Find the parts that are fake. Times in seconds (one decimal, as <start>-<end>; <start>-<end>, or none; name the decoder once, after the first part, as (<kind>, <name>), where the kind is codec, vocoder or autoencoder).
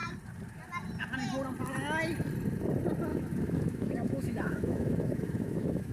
3.1-5.9 (autoencoder, DAC-VAE)